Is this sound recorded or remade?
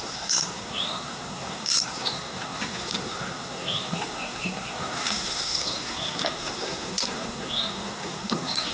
remade